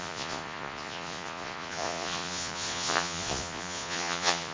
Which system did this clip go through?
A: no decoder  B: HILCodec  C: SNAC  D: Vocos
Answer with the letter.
D